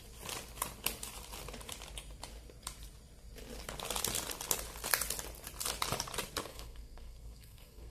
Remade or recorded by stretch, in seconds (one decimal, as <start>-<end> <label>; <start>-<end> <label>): 0.0-6.5 recorded; 6.5-7.9 remade